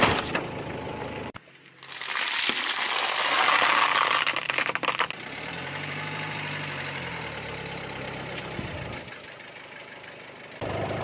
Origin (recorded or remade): remade